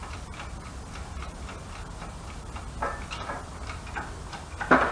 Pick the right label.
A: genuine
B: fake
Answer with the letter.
A